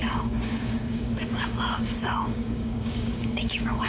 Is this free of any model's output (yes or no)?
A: no